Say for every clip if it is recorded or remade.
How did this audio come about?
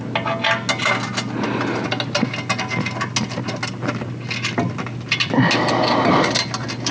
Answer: recorded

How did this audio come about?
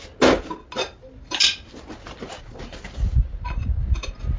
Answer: recorded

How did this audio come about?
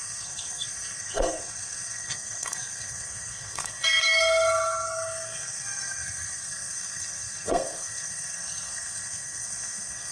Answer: remade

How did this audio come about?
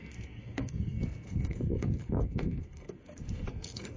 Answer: remade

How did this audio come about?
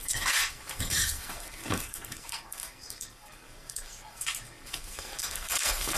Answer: remade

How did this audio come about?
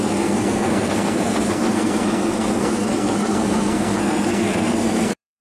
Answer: remade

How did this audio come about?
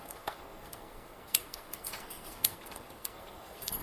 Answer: remade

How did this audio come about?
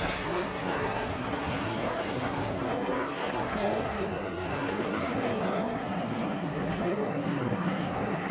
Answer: remade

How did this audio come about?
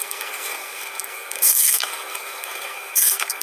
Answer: remade